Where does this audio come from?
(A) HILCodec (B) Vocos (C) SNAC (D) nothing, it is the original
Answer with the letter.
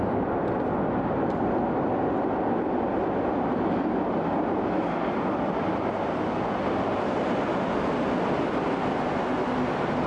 D